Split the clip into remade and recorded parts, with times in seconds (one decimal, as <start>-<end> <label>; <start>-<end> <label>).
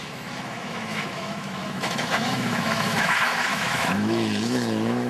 0.0-5.1 remade